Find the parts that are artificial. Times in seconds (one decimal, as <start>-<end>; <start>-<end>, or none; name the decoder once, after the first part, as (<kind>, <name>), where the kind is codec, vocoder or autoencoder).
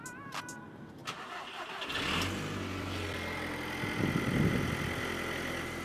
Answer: none